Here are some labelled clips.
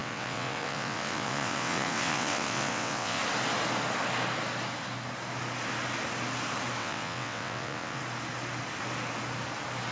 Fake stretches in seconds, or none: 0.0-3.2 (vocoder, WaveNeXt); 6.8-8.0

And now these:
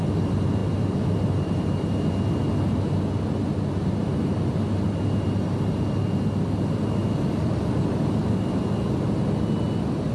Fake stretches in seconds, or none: 0.6-2.1 (vocoder, BigVGAN v2)

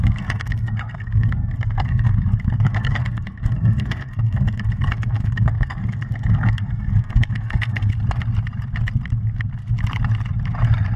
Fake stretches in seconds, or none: 0.0-7.9 (codec, SNAC)